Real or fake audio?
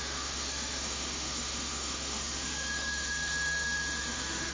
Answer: fake